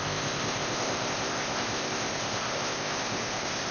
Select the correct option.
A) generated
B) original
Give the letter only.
A